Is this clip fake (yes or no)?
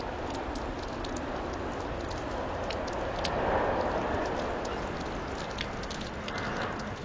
no